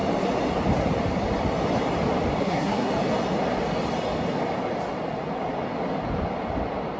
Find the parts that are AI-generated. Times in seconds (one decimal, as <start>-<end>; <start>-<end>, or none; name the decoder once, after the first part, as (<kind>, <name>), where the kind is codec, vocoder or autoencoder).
2.4-2.9 (codec, SNAC)